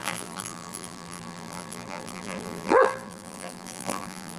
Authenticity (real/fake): fake